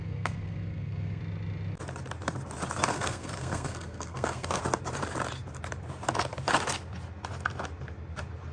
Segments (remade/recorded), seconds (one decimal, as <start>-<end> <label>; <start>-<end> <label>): 0.0-1.2 remade; 1.2-2.9 recorded; 2.9-4.6 remade; 4.6-8.5 recorded